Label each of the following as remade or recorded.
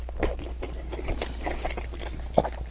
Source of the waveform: recorded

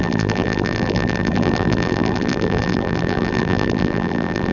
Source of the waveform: remade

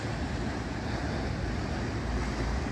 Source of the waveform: recorded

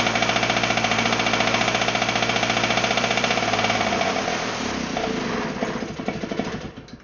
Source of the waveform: recorded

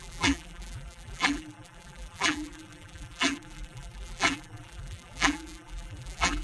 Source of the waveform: remade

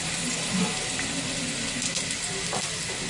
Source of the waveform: recorded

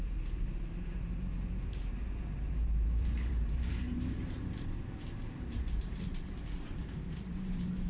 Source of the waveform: remade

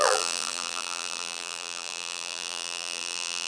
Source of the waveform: remade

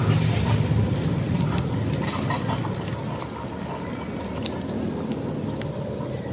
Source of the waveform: recorded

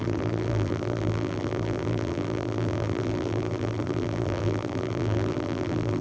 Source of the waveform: remade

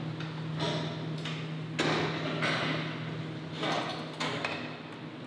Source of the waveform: recorded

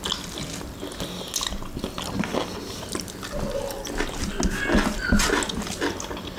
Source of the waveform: recorded